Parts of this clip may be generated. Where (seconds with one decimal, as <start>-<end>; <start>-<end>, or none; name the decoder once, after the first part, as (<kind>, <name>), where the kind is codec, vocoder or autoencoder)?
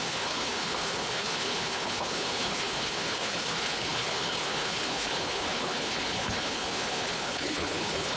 0.0-8.2 (codec, HILCodec)